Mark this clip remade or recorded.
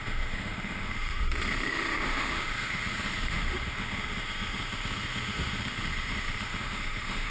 remade